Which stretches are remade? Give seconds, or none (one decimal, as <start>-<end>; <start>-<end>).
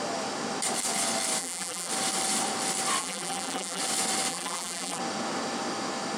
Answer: 1.4-1.9; 3.0-3.8; 4.3-5.0